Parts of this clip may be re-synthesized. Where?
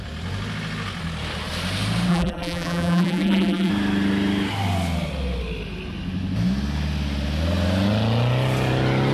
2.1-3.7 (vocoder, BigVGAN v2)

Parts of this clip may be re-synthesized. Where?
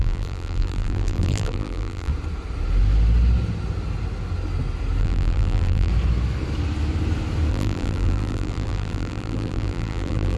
0.0-2.1 (vocoder, BigVGAN v2); 5.0-5.9; 7.5-10.4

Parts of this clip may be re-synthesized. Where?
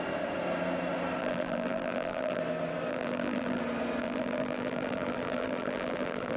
1.2-2.4 (vocoder, BigVGAN v2); 2.9-3.6; 4.0-6.4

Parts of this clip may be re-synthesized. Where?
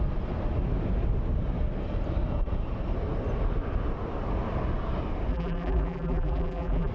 5.3-6.9 (vocoder, BigVGAN v2)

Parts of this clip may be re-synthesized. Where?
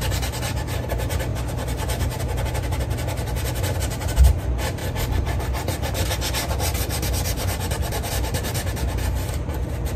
1.3-2.2 (vocoder, BigVGAN v2)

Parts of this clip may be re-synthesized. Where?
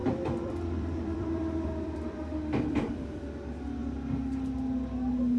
0.0-3.2 (vocoder, BigVGAN v2)